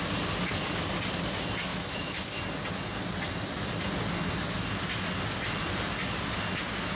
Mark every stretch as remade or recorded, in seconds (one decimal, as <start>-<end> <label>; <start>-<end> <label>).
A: 0.0-1.7 recorded; 1.7-2.2 remade; 2.2-6.9 recorded